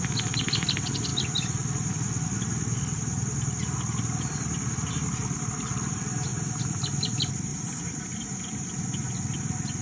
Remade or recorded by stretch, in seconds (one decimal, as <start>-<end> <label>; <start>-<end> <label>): 0.0-6.3 recorded; 6.3-6.8 remade; 6.8-7.5 recorded; 7.5-8.7 remade; 8.7-9.8 recorded